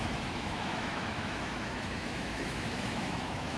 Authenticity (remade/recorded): remade